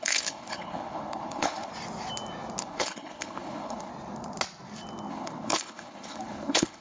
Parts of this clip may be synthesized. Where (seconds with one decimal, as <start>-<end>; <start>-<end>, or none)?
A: 0.0-1.7; 2.6-3.9; 5.1-6.8